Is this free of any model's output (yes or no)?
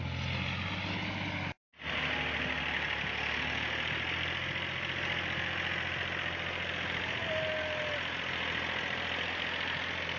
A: yes